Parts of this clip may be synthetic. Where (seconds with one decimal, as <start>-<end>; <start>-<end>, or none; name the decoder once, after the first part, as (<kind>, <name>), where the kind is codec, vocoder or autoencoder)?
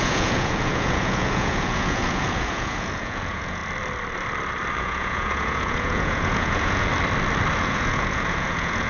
0.0-3.6 (vocoder, Vocos); 4.8-6.9; 7.5-8.9